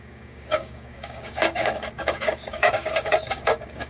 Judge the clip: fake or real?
fake